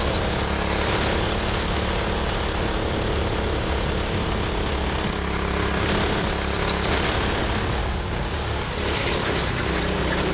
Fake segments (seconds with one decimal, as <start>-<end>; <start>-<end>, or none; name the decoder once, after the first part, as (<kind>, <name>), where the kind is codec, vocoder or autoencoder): 7.8-8.7 (codec, DAC); 9.2-9.8